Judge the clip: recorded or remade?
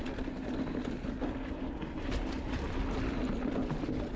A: recorded